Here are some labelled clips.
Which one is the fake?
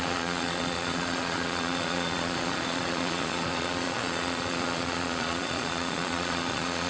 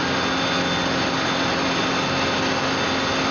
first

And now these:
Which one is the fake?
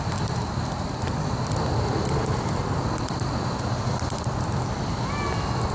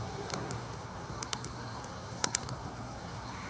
second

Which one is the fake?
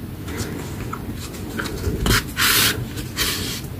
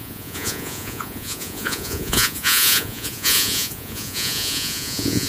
second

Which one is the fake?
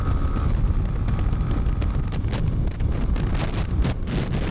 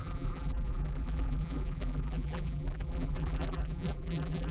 second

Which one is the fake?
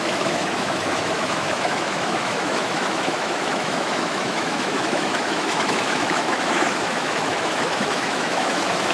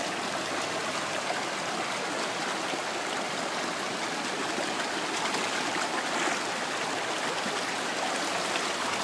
first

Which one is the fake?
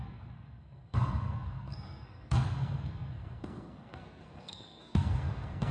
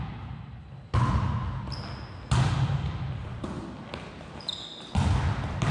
first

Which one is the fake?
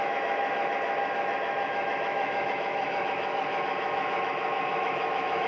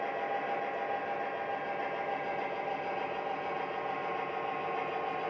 first